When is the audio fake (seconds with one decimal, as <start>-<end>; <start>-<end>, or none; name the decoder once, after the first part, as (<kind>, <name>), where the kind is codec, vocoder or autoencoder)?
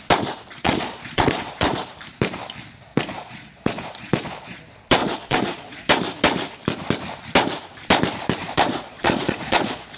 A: 0.5-1.8 (vocoder, Vocos); 2.9-4.6; 5.0-5.9; 8.4-10.0